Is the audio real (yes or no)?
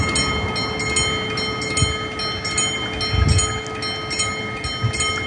yes